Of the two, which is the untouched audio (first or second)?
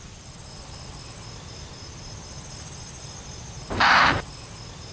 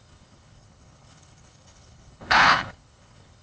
first